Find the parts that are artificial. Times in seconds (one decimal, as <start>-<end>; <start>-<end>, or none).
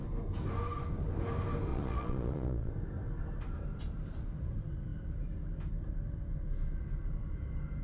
1.7-2.7